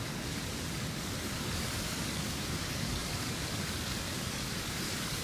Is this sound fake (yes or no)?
yes